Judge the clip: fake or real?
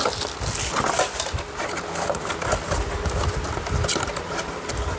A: real